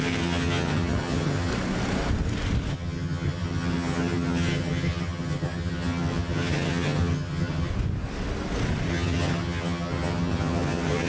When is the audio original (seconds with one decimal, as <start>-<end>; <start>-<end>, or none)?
1.5-2.7; 7.7-8.9

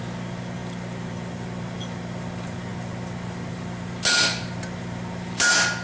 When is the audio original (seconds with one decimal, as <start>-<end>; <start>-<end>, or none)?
0.0-5.8